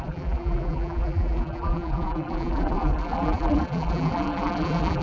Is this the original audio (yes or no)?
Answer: no